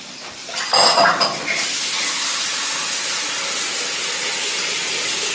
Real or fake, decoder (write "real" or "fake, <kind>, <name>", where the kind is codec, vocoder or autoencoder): real